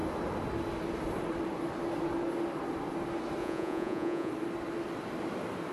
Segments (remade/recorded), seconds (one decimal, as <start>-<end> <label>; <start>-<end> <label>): 0.0-3.4 recorded; 3.4-4.3 remade; 4.3-5.7 recorded

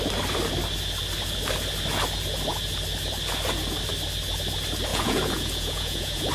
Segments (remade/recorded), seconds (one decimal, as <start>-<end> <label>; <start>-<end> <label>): 0.0-4.9 recorded; 4.9-6.3 remade

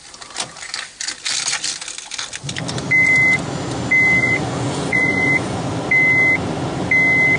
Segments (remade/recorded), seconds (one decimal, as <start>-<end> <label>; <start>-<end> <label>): 0.0-4.2 recorded; 4.2-5.6 remade; 5.6-7.4 recorded

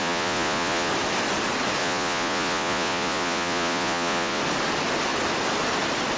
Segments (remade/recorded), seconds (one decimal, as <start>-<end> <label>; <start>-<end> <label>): 0.0-0.9 remade; 0.9-1.8 recorded; 1.8-4.4 remade; 4.4-6.2 recorded

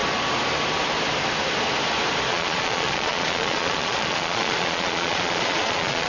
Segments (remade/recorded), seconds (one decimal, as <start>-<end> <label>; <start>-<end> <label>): 0.0-2.3 recorded; 2.3-6.1 remade